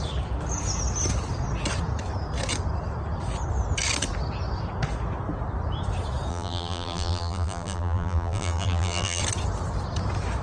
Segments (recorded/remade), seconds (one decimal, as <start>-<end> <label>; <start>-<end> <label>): 0.0-6.3 recorded; 6.3-9.2 remade; 9.2-10.4 recorded